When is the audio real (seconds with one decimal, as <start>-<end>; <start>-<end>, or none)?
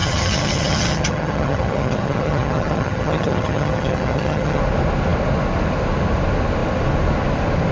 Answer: 4.6-7.7